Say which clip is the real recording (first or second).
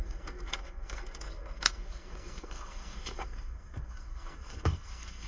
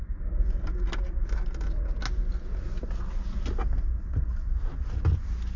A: second